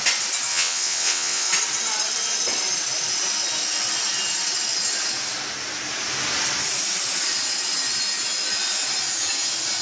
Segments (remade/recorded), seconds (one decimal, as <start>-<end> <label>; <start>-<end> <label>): 0.0-0.5 recorded; 0.5-1.5 remade; 1.5-9.8 recorded